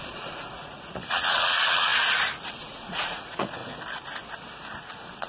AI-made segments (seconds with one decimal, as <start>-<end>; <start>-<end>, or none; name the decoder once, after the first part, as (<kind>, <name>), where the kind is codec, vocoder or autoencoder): 0.0-1.9 (vocoder, Vocos); 2.5-3.6; 4.8-5.3